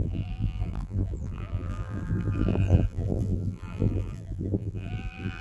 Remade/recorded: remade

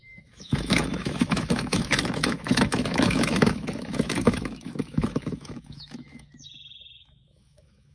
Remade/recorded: remade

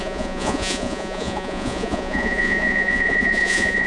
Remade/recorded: remade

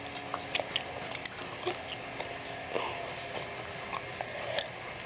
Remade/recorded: recorded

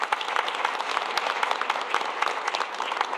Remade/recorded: recorded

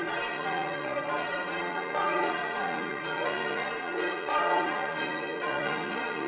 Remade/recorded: remade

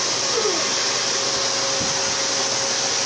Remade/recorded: recorded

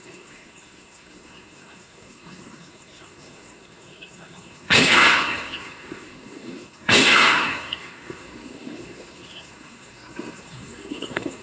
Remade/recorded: remade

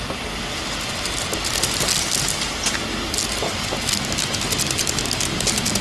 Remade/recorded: recorded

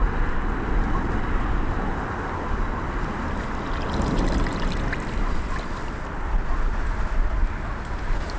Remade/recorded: recorded